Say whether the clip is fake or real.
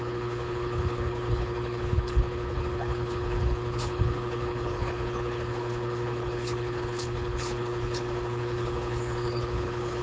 fake